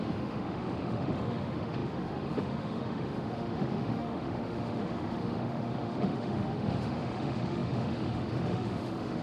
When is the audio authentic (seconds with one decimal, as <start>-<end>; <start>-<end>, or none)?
none